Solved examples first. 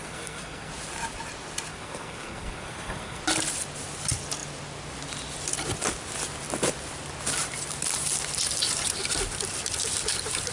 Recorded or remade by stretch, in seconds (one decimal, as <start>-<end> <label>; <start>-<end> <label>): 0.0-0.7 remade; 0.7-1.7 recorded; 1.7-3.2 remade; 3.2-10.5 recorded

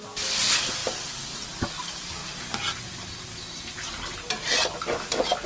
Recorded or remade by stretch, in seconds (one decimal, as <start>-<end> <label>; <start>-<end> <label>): 0.0-5.5 recorded

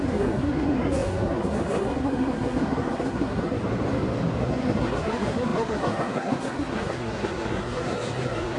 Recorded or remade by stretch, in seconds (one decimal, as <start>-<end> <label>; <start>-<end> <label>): 0.0-3.6 remade; 3.6-4.4 recorded; 4.4-8.6 remade